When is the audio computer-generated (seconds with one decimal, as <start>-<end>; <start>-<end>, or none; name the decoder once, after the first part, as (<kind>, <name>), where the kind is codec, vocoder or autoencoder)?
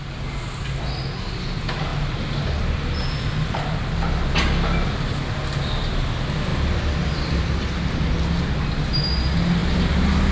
none